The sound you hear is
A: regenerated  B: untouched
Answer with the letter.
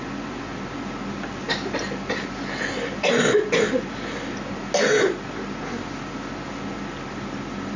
B